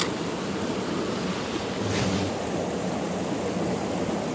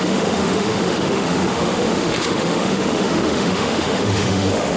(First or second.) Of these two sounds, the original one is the first